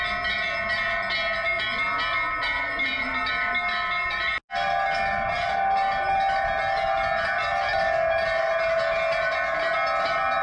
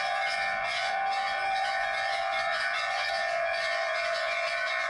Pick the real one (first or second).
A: first